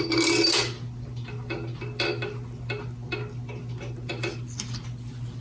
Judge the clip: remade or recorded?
recorded